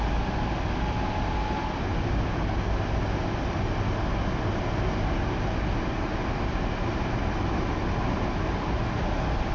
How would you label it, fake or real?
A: real